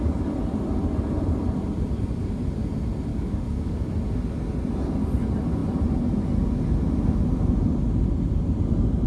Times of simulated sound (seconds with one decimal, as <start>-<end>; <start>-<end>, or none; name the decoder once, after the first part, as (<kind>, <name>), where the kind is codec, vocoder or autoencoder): 3.1-3.9 (codec, DAC)